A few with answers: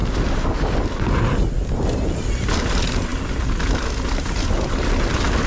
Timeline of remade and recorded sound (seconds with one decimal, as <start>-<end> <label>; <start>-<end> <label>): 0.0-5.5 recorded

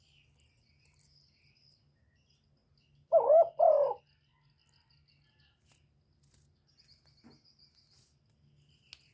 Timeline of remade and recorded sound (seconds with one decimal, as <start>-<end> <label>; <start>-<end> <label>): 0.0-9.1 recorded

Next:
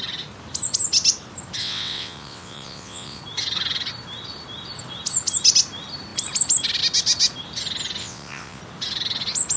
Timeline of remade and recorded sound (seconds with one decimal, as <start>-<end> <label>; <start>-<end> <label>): 0.0-1.6 recorded; 1.6-3.2 remade; 3.2-8.0 recorded; 8.0-8.6 remade; 8.6-9.6 recorded

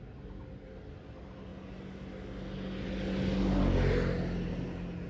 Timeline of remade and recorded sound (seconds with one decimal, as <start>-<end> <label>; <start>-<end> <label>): 0.0-5.1 recorded

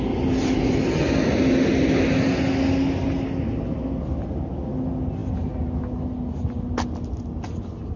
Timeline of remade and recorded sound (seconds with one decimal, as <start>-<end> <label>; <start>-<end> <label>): 0.0-8.0 recorded